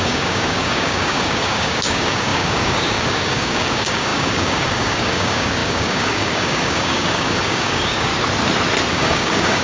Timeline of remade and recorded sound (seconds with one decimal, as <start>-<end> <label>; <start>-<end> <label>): 0.0-8.1 remade; 8.1-8.9 recorded; 8.9-9.6 remade

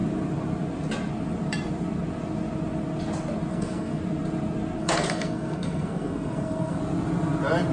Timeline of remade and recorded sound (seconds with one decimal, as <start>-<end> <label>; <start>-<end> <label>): 0.0-3.5 recorded; 3.5-4.0 remade; 4.0-4.8 recorded; 4.8-6.8 remade; 6.8-7.7 recorded

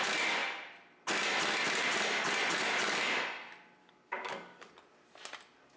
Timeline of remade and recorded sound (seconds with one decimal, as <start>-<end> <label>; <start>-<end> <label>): 0.0-3.8 recorded; 3.8-4.7 remade; 4.7-5.8 recorded

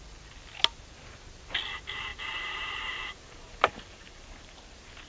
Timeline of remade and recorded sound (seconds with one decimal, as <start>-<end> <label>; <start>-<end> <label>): 0.0-2.1 recorded; 2.1-4.6 remade; 4.6-5.1 recorded

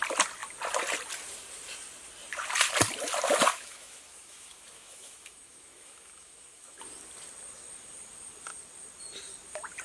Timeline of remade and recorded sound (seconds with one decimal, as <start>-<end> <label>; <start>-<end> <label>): 0.0-3.5 recorded; 3.5-6.8 remade; 6.8-9.8 recorded

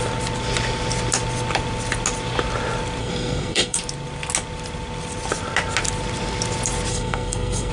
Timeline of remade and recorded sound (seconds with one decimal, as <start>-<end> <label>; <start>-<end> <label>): 0.0-3.0 recorded; 3.0-3.8 remade; 3.8-6.9 recorded; 6.9-7.7 remade

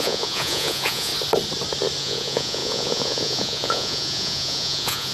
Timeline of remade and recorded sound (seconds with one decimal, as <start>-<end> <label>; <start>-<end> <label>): 0.0-1.1 remade; 1.1-2.0 recorded; 2.0-5.1 remade